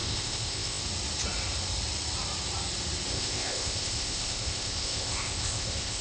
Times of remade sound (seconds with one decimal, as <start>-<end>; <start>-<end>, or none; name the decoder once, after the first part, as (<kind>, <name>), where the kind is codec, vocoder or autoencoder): 0.0-0.8 (codec, ZipCodec); 3.1-6.0